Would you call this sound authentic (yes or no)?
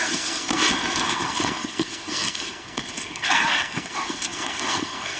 no